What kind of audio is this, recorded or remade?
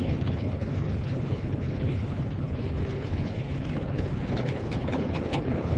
remade